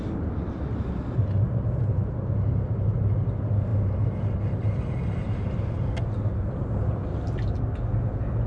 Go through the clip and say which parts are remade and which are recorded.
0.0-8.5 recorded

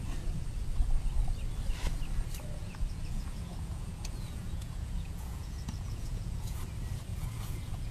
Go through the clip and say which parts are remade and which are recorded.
0.0-2.6 recorded; 2.6-6.6 remade; 6.6-7.1 recorded; 7.1-7.9 remade

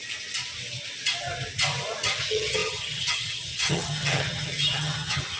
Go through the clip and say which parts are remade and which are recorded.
0.0-2.2 recorded; 2.2-5.4 remade

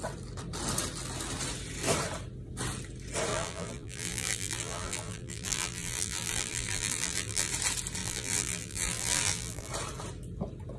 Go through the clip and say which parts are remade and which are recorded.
0.0-3.3 recorded; 3.3-7.5 remade; 7.5-8.0 recorded; 8.0-9.7 remade; 9.7-10.8 recorded

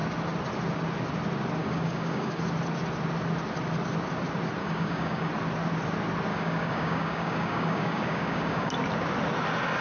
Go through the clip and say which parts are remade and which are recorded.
0.0-1.6 recorded; 1.6-2.4 remade; 2.4-4.6 recorded; 4.6-5.3 remade; 5.3-6.3 recorded; 6.3-8.7 remade; 8.7-9.8 recorded